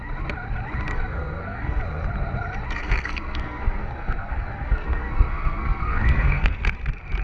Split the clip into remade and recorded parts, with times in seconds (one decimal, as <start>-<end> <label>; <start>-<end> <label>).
0.0-0.9 recorded; 0.9-1.8 remade; 1.8-2.8 recorded; 2.8-6.6 remade; 6.6-7.2 recorded